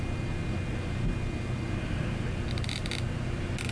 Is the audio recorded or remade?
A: recorded